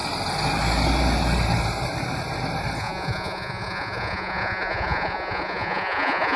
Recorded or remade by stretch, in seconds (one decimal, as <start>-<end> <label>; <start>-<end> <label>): 0.0-2.8 recorded; 2.8-6.4 remade